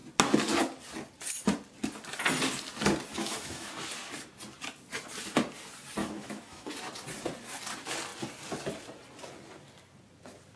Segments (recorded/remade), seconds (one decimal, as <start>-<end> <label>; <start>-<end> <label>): 0.0-3.1 recorded; 3.1-3.7 remade; 3.7-6.0 recorded; 6.0-6.7 remade; 6.7-10.6 recorded